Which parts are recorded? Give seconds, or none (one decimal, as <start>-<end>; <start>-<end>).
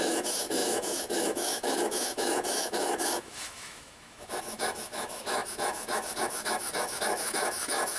none